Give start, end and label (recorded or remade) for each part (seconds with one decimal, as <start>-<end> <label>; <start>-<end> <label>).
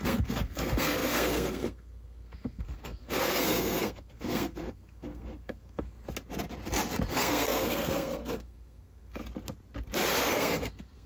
0.0-6.0 remade; 6.0-7.1 recorded; 7.1-9.2 remade; 9.2-10.2 recorded; 10.2-11.1 remade